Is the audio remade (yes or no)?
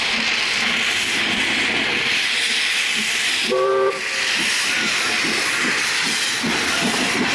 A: yes